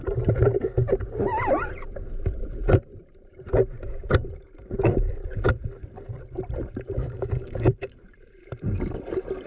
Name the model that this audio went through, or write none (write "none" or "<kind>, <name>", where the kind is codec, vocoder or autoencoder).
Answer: vocoder, BigVGAN v2